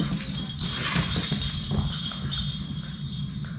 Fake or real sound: real